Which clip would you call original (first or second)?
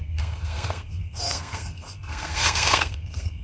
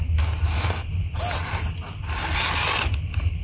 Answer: second